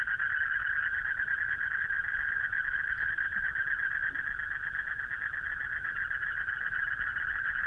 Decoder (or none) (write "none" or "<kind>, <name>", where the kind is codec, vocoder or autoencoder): none